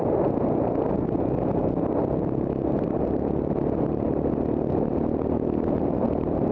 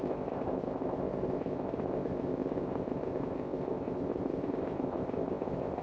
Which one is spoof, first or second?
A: second